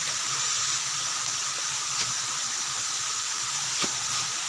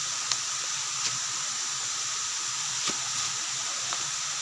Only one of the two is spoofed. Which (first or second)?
first